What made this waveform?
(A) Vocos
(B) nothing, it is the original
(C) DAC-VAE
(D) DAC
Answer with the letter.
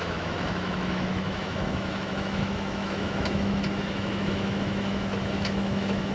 C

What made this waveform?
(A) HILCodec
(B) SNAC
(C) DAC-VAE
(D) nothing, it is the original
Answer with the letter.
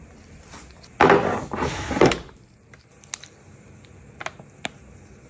D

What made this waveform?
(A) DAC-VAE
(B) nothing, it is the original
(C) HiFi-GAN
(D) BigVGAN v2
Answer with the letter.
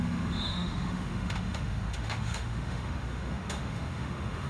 A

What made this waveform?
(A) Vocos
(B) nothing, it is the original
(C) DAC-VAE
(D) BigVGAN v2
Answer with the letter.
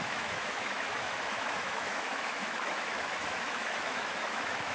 C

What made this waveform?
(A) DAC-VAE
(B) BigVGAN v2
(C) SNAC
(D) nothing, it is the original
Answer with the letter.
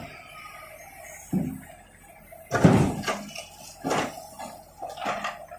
D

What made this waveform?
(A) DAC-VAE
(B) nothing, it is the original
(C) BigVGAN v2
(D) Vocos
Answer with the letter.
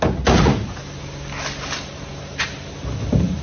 B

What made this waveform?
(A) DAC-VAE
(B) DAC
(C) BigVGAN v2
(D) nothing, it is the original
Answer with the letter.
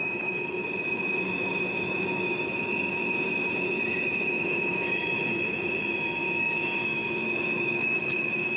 A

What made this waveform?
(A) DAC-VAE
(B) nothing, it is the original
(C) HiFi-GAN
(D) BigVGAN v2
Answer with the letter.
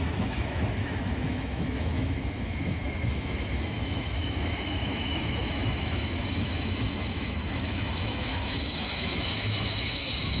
A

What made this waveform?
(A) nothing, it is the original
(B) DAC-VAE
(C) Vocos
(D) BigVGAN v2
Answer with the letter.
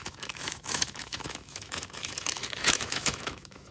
B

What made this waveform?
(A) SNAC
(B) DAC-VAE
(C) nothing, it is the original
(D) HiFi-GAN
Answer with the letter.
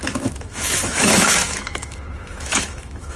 B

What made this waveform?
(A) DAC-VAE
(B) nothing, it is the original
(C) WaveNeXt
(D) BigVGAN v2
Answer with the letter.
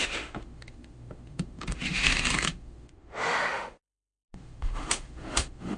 A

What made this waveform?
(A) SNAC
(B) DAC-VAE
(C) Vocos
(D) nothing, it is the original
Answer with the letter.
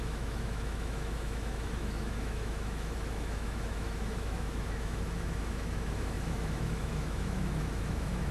B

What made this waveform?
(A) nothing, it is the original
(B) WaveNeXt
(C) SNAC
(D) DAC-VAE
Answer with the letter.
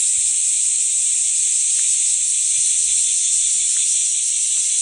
A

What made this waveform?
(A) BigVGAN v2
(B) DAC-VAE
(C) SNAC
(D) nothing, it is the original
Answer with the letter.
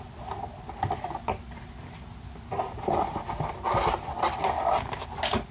D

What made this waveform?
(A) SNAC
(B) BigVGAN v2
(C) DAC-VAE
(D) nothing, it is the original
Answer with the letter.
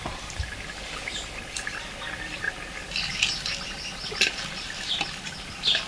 D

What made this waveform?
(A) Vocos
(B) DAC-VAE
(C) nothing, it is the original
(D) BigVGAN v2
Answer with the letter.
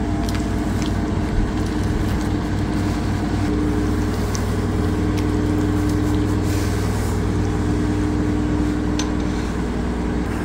C